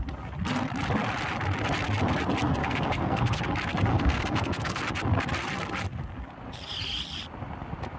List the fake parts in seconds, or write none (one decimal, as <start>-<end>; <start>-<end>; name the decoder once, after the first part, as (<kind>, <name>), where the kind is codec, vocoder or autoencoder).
2.6-3.4 (codec, SNAC); 3.9-4.8